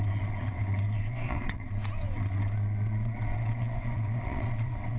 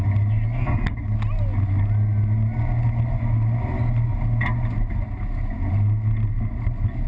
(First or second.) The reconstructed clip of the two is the first